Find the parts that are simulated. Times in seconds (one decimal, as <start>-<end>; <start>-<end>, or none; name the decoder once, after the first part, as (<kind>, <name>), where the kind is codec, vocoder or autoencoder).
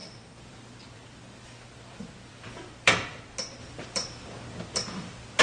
0.0-3.2 (vocoder, BigVGAN v2); 3.6-5.4